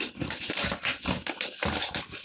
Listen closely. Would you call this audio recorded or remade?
recorded